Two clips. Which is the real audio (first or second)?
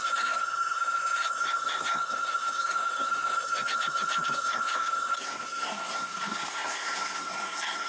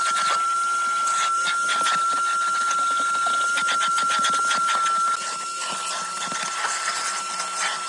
second